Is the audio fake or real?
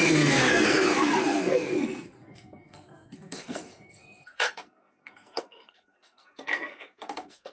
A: fake